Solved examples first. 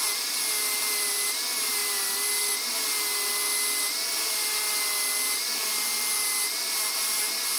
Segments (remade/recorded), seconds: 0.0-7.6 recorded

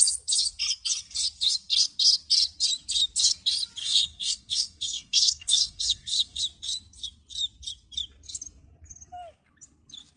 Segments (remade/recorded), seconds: 0.0-3.8 recorded; 3.8-6.4 remade; 6.4-10.2 recorded

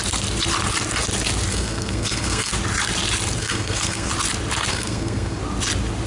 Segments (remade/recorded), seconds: 0.0-1.5 recorded; 1.5-2.5 remade; 2.5-3.4 recorded; 3.4-4.1 remade; 4.1-4.7 recorded; 4.7-5.4 remade; 5.4-6.1 recorded

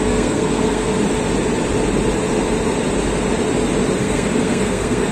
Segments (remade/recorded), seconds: 0.0-0.9 remade; 0.9-4.0 recorded; 4.0-5.1 remade